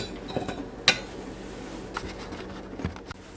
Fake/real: real